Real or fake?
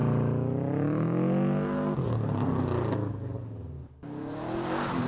real